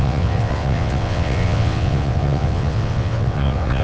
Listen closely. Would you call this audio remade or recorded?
remade